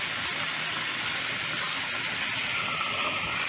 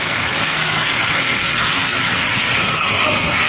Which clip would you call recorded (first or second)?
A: first